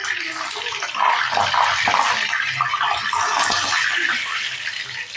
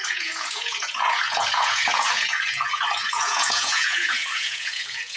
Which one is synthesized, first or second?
second